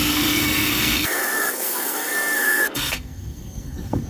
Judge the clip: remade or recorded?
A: remade